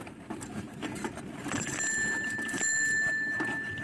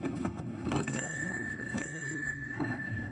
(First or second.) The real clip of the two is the first